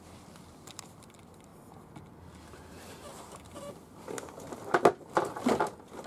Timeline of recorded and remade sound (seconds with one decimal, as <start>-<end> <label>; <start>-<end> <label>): 0.0-6.1 recorded